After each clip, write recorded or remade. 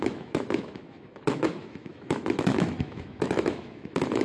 remade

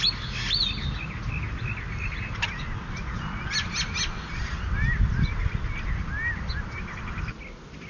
recorded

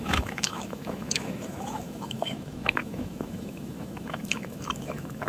remade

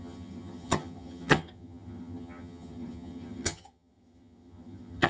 remade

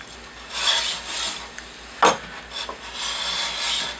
recorded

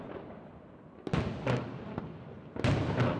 recorded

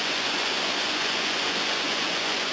remade